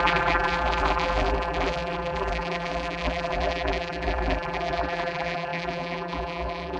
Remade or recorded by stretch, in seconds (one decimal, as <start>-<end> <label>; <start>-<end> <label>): 0.0-6.8 remade